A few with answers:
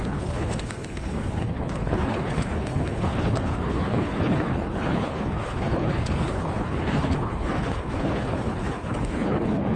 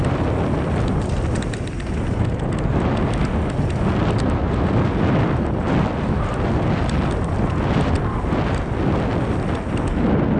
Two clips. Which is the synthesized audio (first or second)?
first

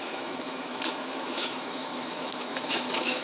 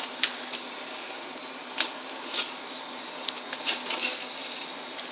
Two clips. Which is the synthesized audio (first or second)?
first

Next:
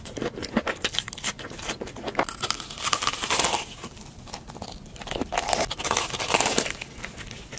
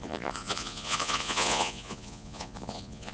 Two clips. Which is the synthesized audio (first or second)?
second